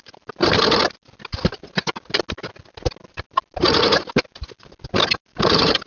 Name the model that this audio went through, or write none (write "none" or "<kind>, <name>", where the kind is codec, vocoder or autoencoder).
none